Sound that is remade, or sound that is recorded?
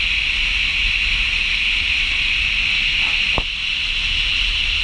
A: recorded